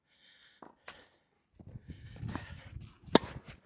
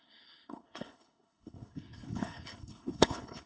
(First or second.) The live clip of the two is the first